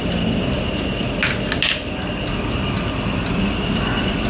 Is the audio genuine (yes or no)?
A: yes